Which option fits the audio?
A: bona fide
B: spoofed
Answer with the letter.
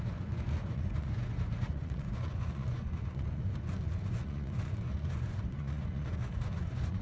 B